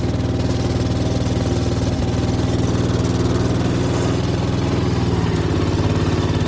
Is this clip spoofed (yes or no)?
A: no